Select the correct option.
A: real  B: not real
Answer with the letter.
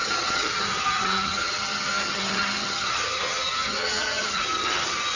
B